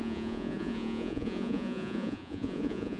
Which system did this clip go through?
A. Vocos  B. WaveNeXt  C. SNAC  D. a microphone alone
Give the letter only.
A